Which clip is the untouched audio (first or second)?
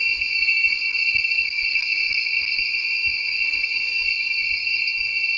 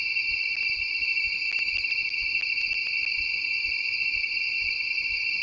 second